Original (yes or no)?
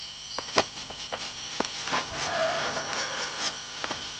yes